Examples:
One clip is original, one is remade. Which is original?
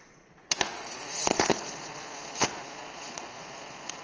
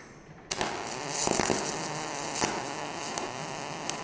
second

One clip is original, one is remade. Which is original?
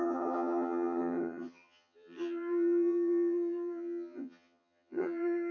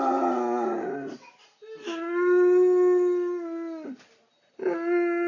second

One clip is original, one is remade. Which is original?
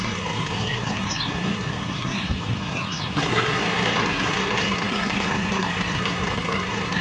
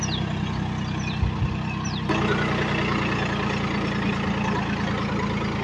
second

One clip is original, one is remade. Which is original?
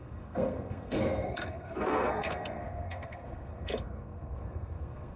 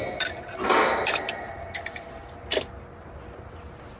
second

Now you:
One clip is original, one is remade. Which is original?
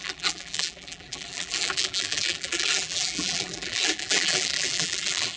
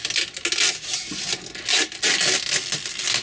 second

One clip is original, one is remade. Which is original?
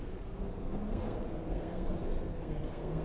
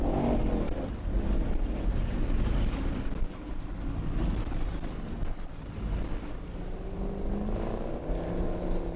second